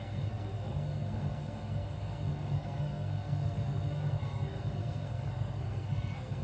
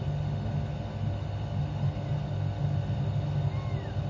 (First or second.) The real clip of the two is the second